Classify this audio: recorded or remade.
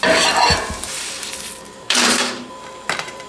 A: remade